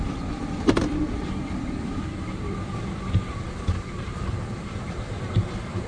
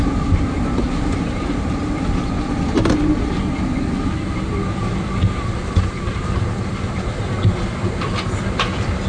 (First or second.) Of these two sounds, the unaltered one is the second